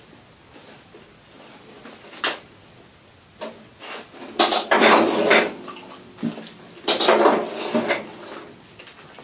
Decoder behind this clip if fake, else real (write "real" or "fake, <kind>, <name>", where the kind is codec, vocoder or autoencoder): real